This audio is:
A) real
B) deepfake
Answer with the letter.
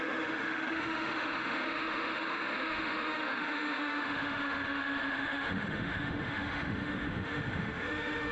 B